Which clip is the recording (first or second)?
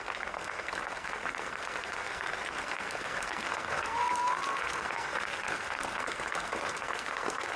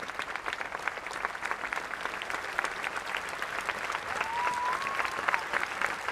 second